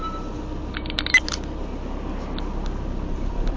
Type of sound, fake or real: real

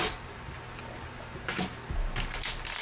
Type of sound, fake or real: real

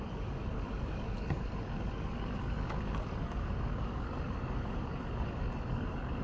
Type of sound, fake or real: fake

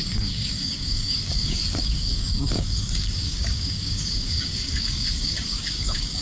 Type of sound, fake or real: fake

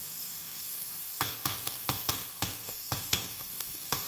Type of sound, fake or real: fake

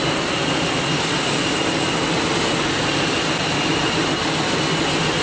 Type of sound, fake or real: real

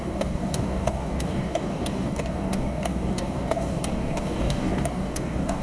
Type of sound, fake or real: fake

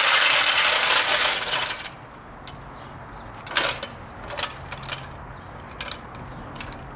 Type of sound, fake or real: real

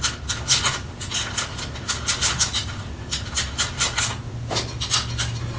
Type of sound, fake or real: real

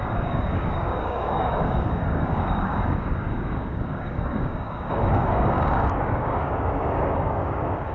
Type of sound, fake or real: fake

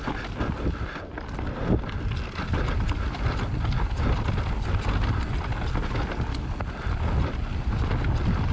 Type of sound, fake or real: real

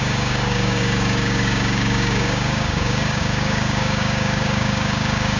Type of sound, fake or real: fake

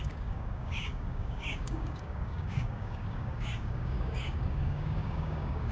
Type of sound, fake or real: fake